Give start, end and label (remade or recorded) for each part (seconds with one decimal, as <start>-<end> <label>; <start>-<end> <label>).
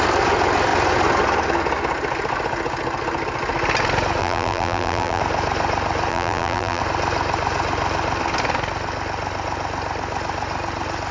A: 0.0-4.2 recorded; 4.2-5.2 remade; 5.2-6.1 recorded; 6.1-6.8 remade; 6.8-11.1 recorded